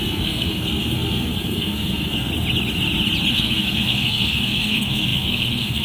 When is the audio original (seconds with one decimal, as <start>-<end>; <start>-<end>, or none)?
2.3-3.3